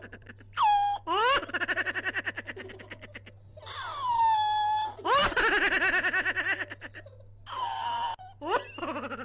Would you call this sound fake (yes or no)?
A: no